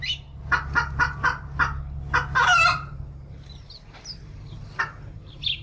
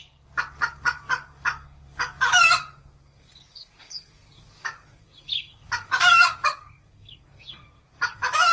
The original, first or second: first